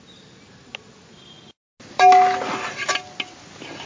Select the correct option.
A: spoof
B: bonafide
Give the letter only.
B